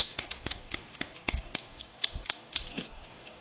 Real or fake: fake